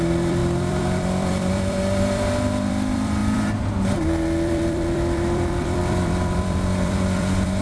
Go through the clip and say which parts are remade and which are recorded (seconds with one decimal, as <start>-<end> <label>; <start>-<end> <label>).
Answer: 0.0-7.6 remade